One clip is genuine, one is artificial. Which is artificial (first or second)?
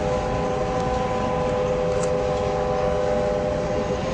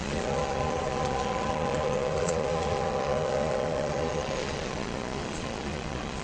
second